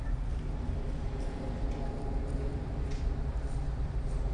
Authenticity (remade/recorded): recorded